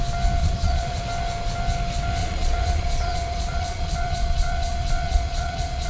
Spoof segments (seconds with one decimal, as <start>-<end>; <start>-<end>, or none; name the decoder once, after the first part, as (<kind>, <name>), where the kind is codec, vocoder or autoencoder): 0.4-1.0 (vocoder, Vocos); 2.2-5.9